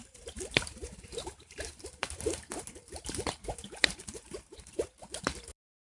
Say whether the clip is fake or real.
fake